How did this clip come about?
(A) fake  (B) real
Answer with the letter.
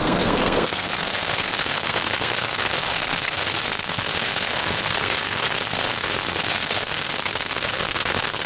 A